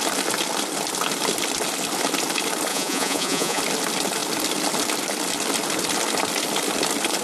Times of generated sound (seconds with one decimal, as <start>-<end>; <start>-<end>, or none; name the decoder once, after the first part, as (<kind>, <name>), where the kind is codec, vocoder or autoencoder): 2.7-3.6 (vocoder, Vocos)